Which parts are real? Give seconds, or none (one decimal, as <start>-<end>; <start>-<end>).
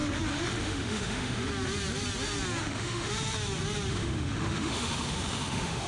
0.0-0.5; 1.5-2.6; 3.1-3.9